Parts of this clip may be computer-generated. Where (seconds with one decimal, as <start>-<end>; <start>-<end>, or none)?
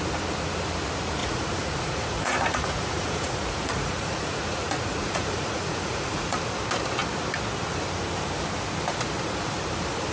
1.2-6.4